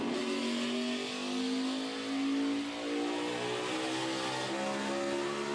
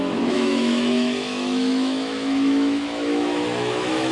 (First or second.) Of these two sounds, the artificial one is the second